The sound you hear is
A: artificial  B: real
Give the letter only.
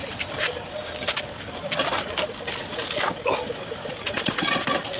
B